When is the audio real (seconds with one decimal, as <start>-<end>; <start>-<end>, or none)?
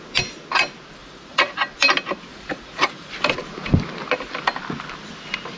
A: 0.0-1.0; 1.6-2.3; 3.1-5.6